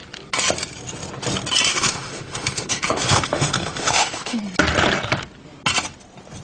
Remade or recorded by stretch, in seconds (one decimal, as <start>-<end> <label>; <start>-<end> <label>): 0.0-1.7 recorded; 1.7-4.4 remade; 4.4-6.4 recorded